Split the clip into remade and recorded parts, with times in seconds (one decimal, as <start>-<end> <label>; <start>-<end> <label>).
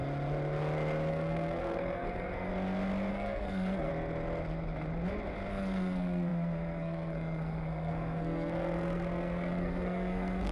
0.0-1.1 recorded; 1.1-2.5 remade; 2.5-3.1 recorded; 3.1-3.9 remade; 3.9-5.5 recorded; 5.5-10.5 remade